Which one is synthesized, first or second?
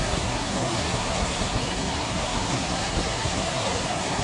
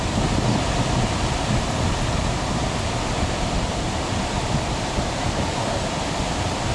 first